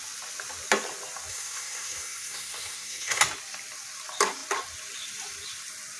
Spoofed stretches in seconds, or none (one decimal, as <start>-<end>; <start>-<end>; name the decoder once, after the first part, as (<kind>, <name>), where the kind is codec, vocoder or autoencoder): 1.3-3.2 (codec, SNAC)